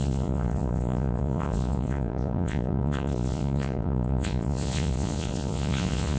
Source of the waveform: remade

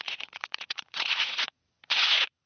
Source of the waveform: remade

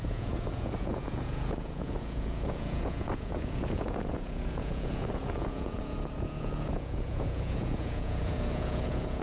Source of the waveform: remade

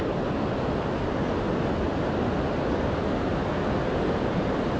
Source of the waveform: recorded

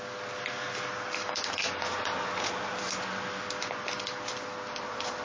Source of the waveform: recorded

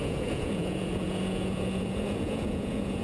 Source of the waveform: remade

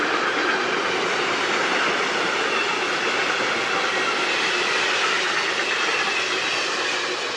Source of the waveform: recorded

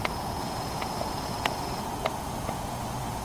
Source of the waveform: remade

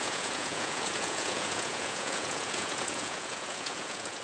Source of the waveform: remade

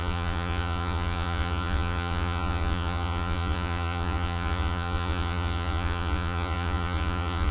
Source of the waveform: remade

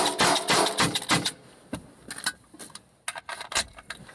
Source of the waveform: recorded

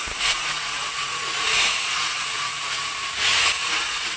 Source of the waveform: remade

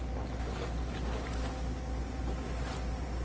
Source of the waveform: recorded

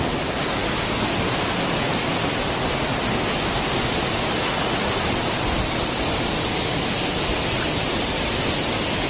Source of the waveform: recorded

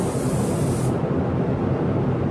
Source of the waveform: recorded